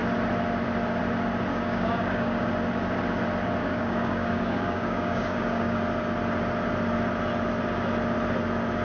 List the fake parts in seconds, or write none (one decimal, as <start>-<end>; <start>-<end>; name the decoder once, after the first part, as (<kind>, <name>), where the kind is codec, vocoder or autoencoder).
1.5-2.5 (codec, DAC); 3.6-5.8